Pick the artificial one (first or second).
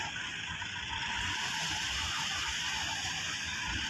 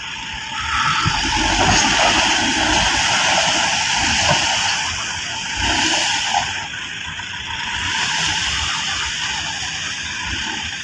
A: second